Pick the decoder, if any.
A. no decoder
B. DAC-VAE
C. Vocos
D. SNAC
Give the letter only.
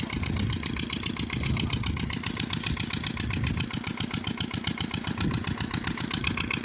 A